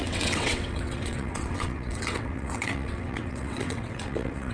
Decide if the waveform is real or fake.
fake